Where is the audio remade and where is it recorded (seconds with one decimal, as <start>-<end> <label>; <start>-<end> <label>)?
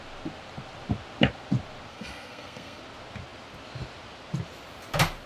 0.0-1.9 recorded; 1.9-2.8 remade; 2.8-5.3 recorded